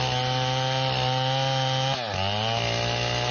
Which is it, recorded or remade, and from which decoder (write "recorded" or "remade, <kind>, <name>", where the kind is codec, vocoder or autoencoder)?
recorded